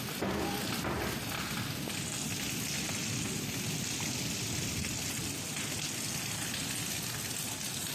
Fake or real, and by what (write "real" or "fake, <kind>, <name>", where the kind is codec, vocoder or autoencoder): real